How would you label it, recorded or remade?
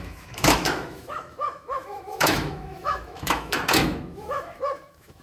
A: remade